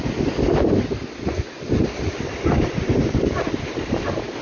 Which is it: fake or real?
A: real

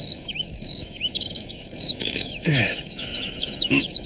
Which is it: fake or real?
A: fake